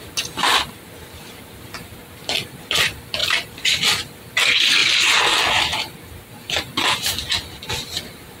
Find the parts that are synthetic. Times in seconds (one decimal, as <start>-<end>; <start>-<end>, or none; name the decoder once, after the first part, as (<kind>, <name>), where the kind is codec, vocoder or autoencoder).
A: none